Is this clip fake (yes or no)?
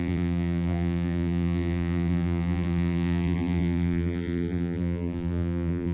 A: yes